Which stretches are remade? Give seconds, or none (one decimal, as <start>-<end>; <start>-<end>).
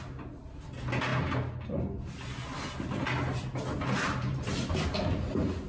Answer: none